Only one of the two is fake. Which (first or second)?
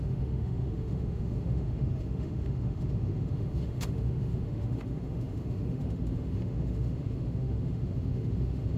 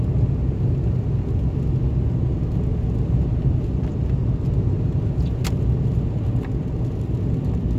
first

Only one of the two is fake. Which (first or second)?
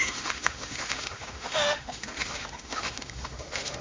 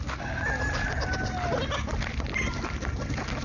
first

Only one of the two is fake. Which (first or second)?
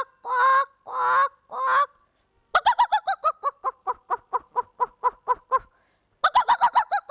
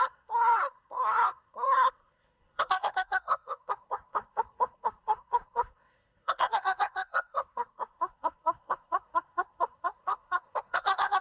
second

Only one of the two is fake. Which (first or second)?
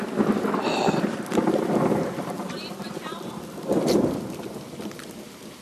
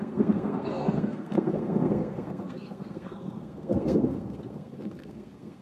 second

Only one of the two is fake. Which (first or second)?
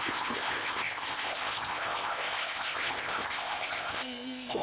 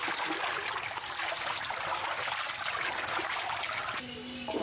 first